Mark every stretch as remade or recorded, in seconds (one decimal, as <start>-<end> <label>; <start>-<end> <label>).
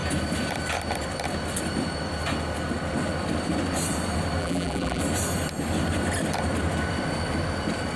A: 0.0-4.4 recorded; 4.4-5.0 remade; 5.0-8.0 recorded